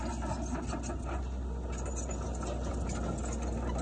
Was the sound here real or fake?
real